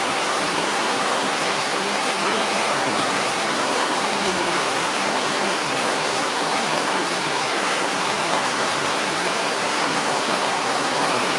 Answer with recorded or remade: remade